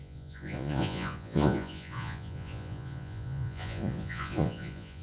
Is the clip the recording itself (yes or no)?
no